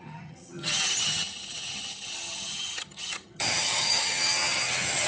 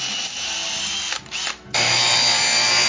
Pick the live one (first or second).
second